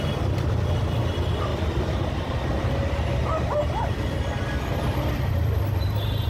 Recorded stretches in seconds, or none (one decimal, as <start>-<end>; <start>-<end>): 0.0-6.3

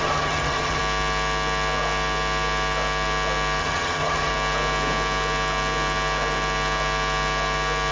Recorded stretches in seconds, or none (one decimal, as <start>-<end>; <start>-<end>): 0.8-3.6; 4.3-7.9